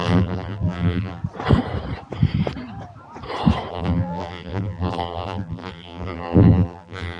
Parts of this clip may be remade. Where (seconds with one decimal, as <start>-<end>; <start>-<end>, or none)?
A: 0.0-1.2; 3.7-7.2